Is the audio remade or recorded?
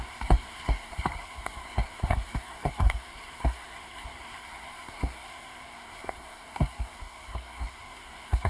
remade